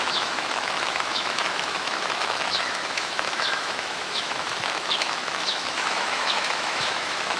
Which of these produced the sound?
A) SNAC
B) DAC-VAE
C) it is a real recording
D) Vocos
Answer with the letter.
B